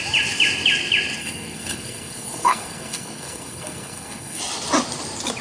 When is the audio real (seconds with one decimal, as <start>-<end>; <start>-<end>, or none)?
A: 0.0-1.2; 4.4-5.4